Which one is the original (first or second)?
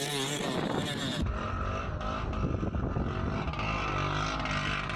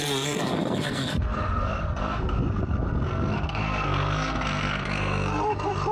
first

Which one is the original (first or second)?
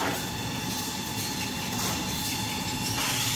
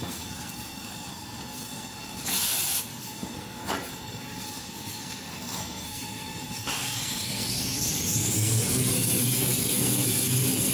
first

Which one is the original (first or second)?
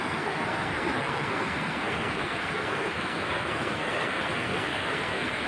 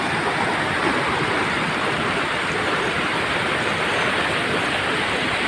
second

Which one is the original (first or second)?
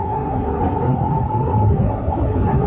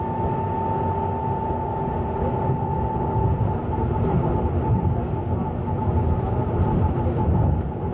second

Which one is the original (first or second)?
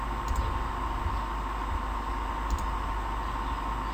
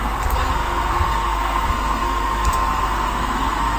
first